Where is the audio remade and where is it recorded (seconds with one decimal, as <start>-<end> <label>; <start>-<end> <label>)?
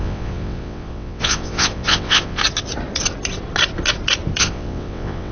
0.0-2.4 remade; 2.4-4.4 recorded; 4.4-5.3 remade